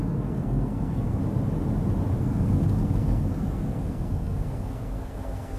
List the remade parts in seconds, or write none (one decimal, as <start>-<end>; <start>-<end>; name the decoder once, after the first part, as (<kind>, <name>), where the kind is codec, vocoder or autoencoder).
0.0-1.2 (codec, SNAC); 2.2-5.6